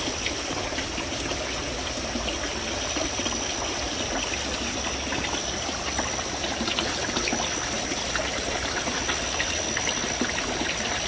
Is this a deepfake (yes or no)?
no